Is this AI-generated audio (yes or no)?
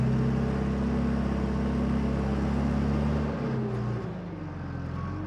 no